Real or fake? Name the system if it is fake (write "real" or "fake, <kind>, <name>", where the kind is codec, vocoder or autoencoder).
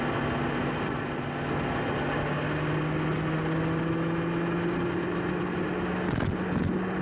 real